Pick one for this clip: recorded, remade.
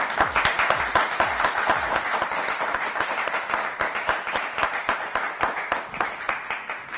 recorded